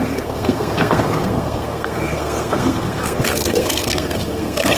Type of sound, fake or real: fake